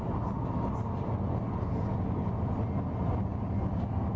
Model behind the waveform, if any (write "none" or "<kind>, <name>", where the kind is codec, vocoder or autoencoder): none